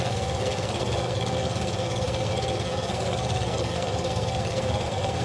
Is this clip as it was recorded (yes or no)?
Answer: no